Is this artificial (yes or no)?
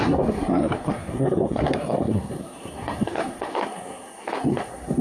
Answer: yes